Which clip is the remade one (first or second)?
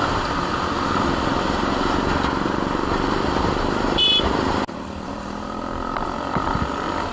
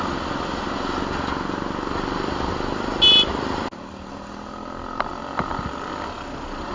first